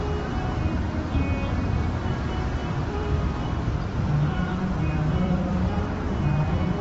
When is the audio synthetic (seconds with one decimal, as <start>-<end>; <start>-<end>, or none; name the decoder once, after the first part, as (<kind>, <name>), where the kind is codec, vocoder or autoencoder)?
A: 0.7-1.2 (vocoder, BigVGAN v2); 2.6-6.0